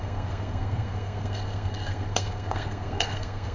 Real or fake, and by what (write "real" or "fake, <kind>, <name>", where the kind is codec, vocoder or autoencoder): fake, codec, SNAC